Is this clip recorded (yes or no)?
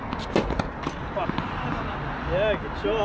yes